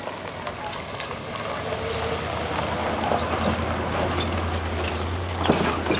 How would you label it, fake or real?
real